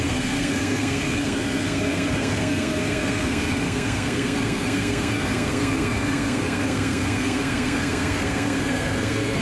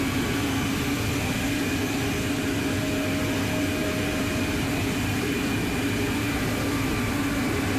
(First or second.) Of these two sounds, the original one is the second